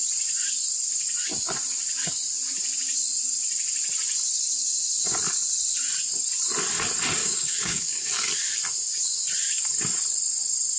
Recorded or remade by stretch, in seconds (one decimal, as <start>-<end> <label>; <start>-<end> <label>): 0.0-7.2 recorded; 7.2-8.1 remade; 8.1-10.8 recorded